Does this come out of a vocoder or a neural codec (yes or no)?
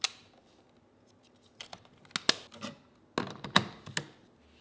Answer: no